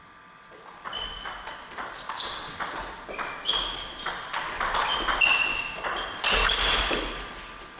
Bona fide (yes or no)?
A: yes